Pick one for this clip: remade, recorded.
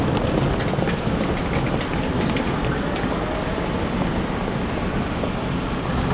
recorded